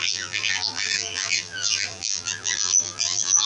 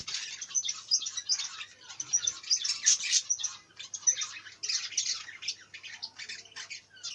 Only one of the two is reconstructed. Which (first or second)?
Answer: first